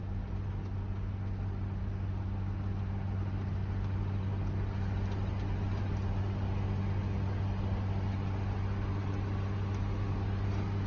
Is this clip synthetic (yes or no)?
no